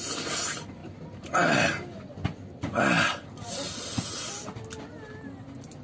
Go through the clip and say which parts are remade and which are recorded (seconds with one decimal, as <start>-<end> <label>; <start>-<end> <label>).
0.0-5.8 recorded